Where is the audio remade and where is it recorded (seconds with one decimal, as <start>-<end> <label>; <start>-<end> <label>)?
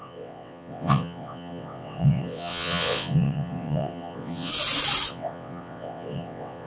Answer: 0.0-4.5 remade; 4.5-5.1 recorded; 5.1-6.7 remade